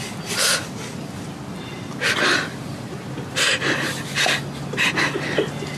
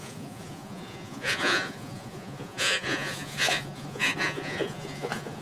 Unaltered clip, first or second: first